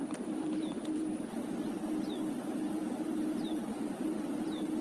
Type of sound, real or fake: fake